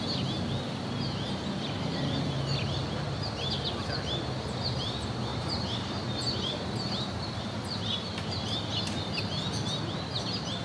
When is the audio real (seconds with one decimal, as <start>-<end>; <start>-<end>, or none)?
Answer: 0.0-5.3; 7.8-10.6